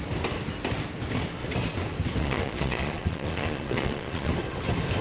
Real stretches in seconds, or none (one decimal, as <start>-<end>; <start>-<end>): 0.0-2.2; 4.3-5.0